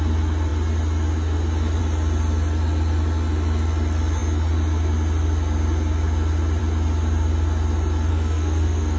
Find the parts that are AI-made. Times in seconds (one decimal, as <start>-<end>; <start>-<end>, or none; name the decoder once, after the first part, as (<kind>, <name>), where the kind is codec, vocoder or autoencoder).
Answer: 8.1-9.0 (codec, SNAC)